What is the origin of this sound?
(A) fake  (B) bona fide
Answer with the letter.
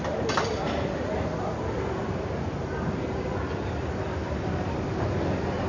B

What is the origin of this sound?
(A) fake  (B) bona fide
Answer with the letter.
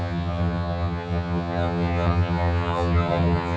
A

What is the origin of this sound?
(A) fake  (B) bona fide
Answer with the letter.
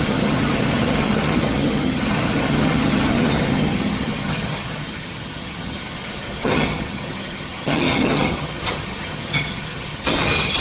A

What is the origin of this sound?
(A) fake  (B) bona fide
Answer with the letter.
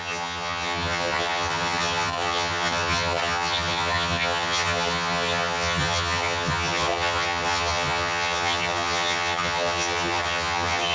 A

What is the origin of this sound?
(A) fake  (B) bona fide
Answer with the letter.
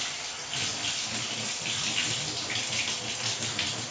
B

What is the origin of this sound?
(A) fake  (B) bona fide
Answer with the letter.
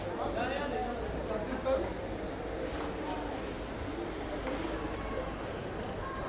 B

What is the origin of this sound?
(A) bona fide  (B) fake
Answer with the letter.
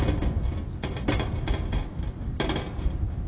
A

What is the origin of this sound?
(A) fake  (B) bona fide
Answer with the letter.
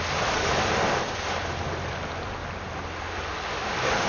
B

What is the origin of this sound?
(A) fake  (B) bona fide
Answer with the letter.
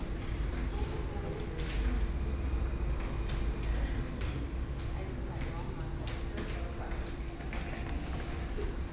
B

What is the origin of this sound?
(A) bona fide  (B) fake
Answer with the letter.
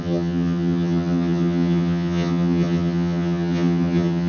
B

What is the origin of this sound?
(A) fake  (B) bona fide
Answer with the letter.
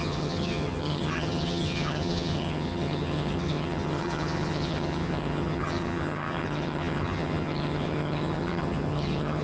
A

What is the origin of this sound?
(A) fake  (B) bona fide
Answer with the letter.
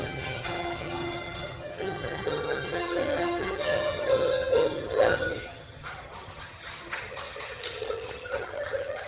A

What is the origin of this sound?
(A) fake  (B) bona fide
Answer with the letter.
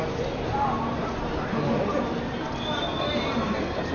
B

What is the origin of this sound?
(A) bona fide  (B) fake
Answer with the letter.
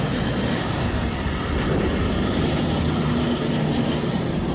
A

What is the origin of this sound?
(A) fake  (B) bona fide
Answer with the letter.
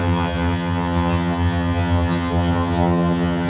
A